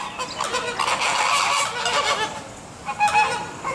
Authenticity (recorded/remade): recorded